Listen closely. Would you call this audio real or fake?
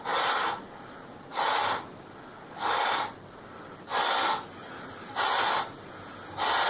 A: real